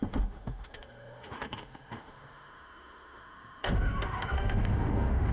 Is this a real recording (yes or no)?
no